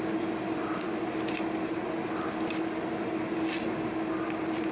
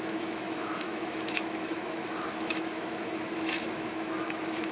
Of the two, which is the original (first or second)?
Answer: first